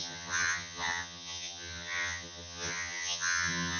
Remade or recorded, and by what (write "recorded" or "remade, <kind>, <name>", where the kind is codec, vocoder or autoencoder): remade, vocoder, HiFi-GAN